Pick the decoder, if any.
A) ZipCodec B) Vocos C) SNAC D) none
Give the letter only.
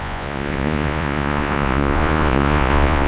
B